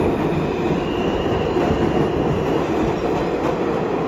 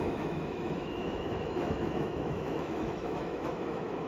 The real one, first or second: first